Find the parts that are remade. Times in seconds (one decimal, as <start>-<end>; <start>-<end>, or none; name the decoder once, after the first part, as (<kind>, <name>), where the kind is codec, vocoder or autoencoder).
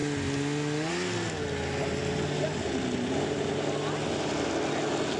none